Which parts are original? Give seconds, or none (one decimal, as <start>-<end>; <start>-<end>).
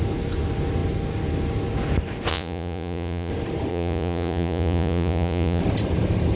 0.0-2.3; 3.3-3.7; 5.6-6.4